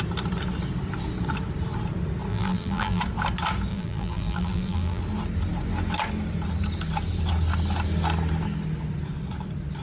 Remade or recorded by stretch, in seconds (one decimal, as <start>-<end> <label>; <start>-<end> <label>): 0.0-2.3 recorded; 2.3-3.0 remade; 3.0-3.7 recorded; 3.7-5.0 remade; 5.0-9.8 recorded